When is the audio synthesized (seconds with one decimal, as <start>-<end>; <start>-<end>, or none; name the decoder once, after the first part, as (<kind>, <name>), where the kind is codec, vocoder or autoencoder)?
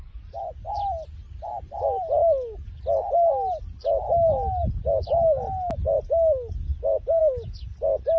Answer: none